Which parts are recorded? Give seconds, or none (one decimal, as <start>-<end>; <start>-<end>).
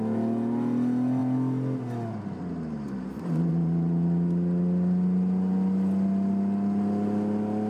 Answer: 0.0-7.7